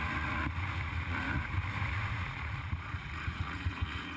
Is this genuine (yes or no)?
no